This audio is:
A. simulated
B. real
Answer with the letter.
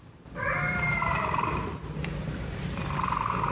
A